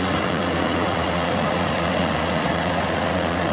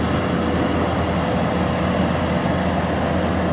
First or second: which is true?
second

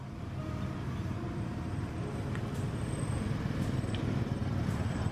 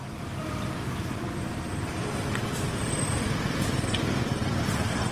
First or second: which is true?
first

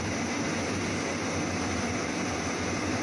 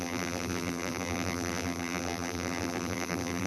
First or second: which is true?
first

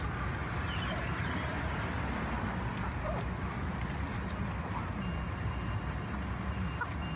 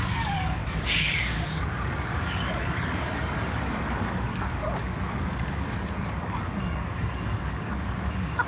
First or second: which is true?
first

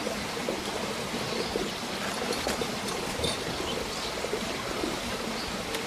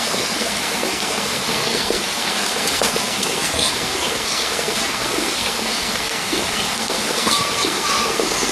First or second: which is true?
first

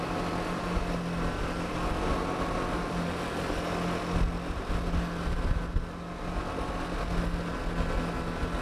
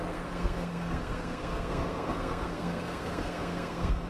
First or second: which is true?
first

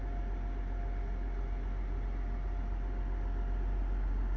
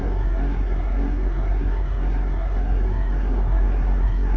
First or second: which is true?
first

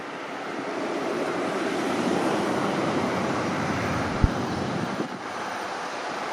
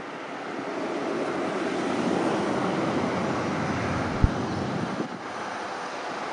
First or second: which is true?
second